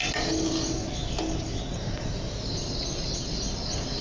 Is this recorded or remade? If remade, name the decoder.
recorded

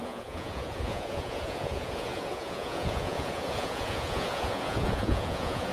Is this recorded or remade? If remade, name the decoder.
remade, vocoder, Vocos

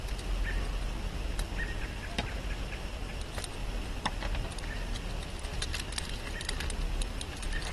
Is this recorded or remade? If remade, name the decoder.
recorded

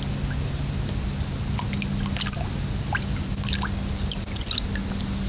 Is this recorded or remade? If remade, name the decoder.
recorded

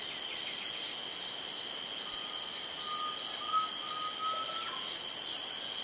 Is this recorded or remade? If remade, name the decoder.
recorded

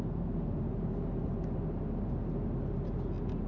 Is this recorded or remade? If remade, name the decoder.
recorded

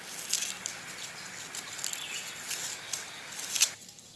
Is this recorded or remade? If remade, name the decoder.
recorded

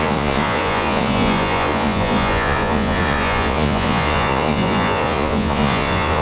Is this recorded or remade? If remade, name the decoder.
remade, vocoder, Vocos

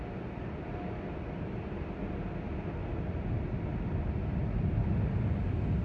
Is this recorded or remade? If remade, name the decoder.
recorded